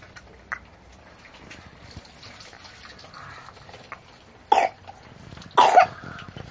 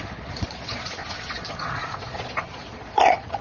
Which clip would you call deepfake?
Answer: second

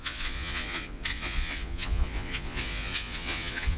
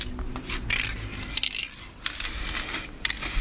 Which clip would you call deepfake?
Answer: first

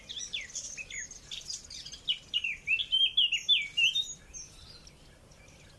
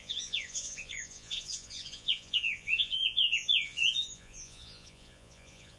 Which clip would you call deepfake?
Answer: second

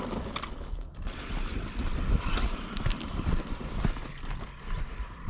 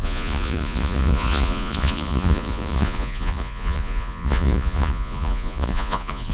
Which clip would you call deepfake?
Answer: second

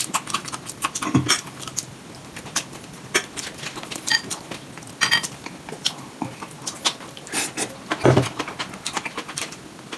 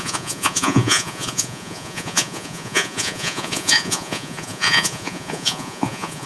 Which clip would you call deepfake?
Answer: second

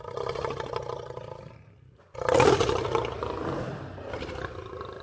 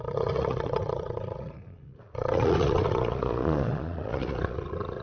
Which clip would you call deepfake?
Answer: second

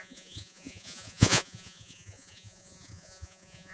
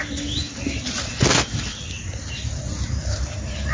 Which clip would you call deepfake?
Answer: first